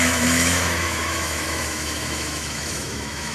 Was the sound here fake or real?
fake